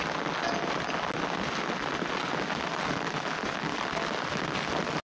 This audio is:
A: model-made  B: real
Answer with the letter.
B